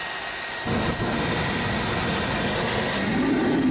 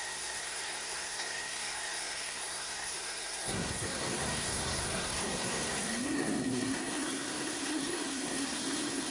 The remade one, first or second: second